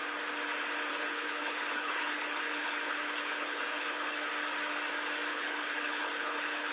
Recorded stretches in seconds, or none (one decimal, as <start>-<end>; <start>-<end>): 0.0-0.9; 4.3-5.3